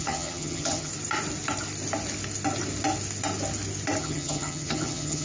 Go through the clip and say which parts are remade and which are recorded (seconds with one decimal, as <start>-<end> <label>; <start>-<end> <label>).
0.0-0.9 remade; 0.9-4.0 recorded; 4.0-5.2 remade